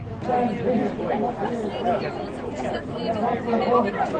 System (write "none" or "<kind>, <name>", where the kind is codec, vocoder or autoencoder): none